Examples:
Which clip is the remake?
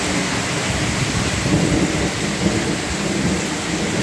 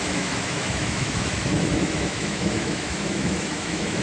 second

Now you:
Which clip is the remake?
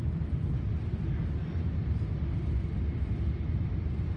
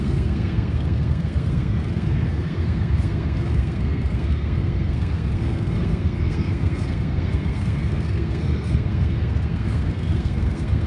second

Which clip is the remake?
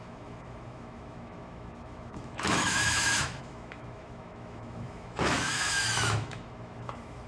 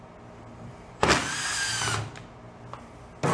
first